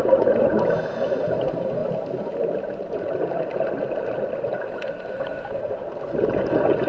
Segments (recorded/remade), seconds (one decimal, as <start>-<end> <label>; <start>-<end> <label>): 0.0-1.8 remade; 1.8-4.4 recorded; 4.4-6.9 remade

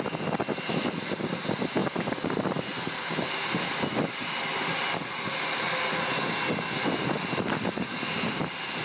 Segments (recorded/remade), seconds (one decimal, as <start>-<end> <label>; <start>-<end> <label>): 0.0-8.8 recorded

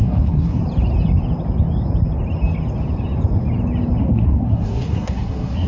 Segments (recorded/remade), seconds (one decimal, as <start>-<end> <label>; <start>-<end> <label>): 0.0-0.6 remade; 0.6-4.0 recorded; 4.0-5.7 remade

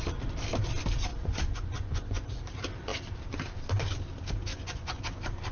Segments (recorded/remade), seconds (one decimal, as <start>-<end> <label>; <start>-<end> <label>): 0.0-1.1 recorded; 1.1-2.4 remade; 2.4-4.5 recorded; 4.5-5.0 remade; 5.0-5.5 recorded